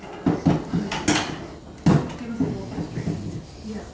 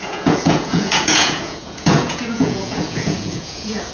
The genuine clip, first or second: first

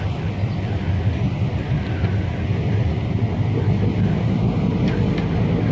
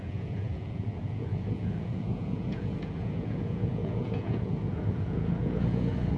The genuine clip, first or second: first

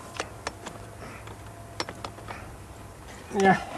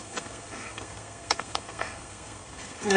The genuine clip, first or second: first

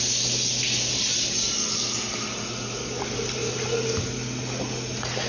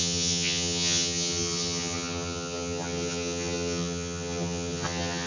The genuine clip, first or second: first